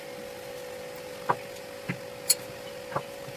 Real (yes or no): yes